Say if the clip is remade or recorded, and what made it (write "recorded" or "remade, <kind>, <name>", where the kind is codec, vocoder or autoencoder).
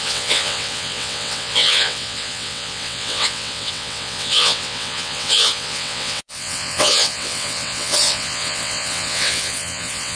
remade, vocoder, WaveNeXt